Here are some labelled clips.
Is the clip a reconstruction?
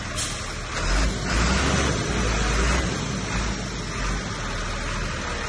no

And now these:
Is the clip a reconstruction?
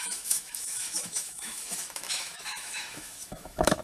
yes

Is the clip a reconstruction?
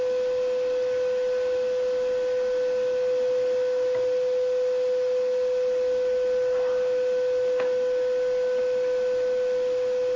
no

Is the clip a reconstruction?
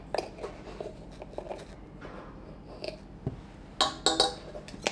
no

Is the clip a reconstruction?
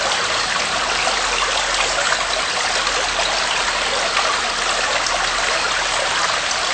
no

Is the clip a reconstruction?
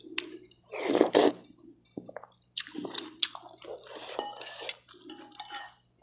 no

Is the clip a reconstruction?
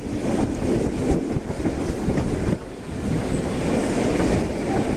no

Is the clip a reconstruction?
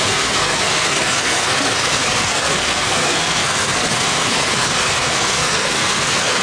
yes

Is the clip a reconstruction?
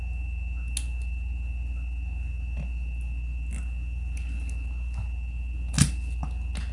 no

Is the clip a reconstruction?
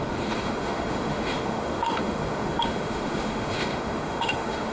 yes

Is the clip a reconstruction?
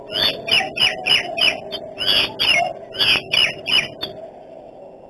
no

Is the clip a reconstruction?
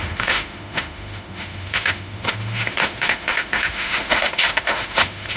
yes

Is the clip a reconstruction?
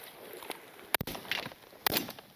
no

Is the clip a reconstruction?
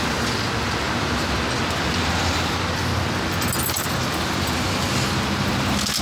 no